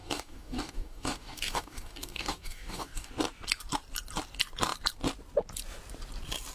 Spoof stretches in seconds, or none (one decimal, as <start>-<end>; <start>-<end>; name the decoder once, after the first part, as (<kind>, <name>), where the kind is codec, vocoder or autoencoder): 0.0-3.1 (codec, DAC)